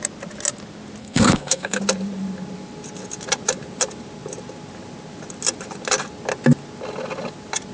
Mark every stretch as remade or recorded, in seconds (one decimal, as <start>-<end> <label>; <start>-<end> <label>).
0.0-1.0 recorded; 1.0-1.8 remade; 1.8-7.7 recorded